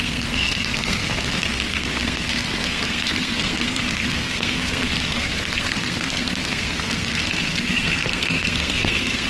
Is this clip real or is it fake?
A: fake